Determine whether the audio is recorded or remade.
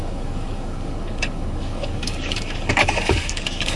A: remade